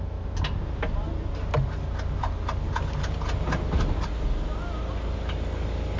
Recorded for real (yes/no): yes